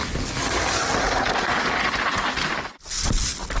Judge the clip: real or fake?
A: real